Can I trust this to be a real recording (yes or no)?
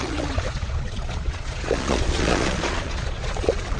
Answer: no